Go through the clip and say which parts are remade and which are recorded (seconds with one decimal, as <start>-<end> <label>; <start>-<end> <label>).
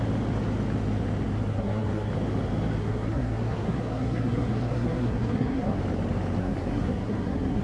0.0-1.5 recorded; 1.5-2.1 remade; 2.1-2.8 recorded; 2.8-5.8 remade; 5.8-6.4 recorded; 6.4-7.6 remade